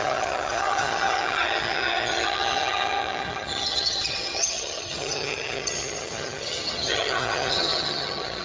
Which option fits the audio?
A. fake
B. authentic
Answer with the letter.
A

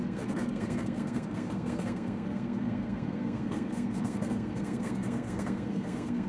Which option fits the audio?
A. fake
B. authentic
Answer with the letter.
A